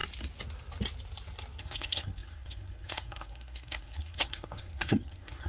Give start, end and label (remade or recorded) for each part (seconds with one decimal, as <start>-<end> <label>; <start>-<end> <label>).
0.0-1.6 recorded; 1.6-5.5 remade